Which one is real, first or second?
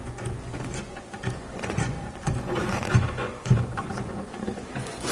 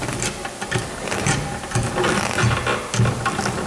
second